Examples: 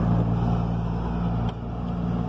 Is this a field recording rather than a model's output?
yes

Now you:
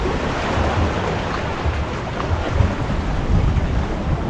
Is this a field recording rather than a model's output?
yes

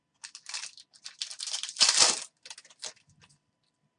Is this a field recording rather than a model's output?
yes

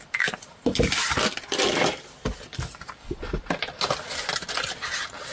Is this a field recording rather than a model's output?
yes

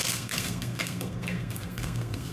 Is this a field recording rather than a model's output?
no